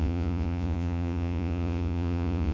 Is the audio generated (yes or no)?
yes